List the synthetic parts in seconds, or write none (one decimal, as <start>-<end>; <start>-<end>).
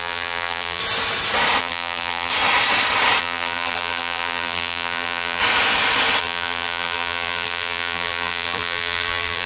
0.0-0.8; 1.6-2.3; 3.2-5.4; 6.2-9.5